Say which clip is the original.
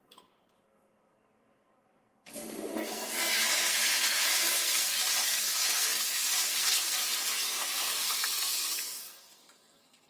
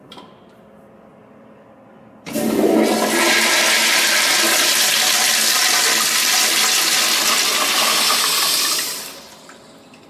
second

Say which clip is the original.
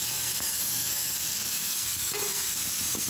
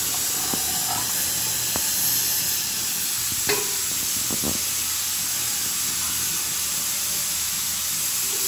second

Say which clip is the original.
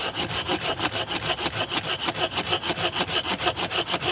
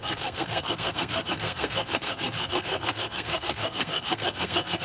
first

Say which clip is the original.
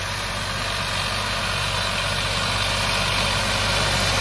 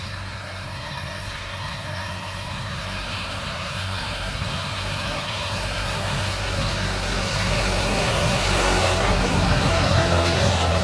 first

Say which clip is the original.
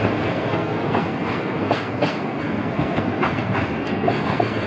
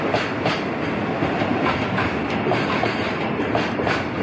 second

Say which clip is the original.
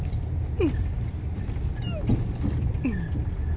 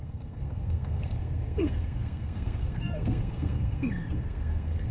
first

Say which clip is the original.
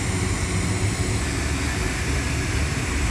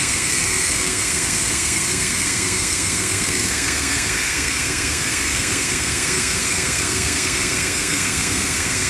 first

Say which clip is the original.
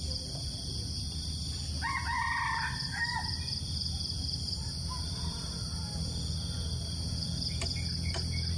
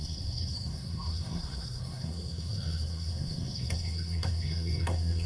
first